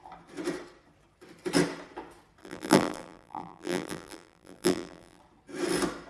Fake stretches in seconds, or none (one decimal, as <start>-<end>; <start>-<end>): 2.4-5.2